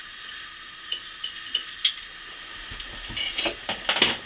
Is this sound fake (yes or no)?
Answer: no